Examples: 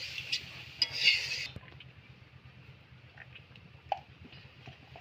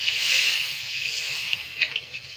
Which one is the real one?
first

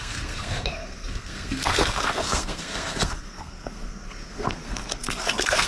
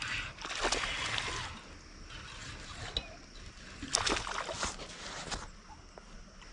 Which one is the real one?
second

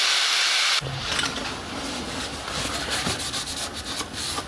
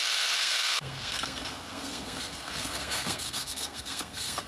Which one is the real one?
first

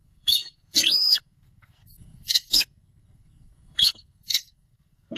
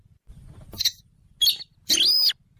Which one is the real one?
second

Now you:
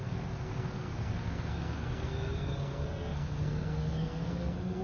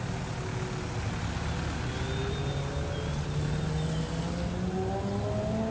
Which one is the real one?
second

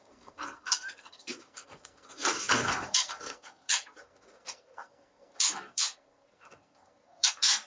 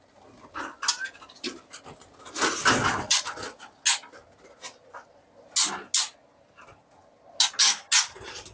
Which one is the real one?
second